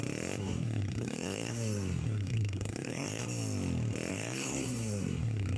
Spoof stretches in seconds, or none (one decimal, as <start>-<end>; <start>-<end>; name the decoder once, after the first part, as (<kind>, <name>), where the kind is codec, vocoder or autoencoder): 0.4-3.2 (codec, SNAC); 4.1-5.6